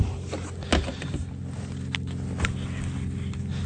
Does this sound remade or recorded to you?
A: recorded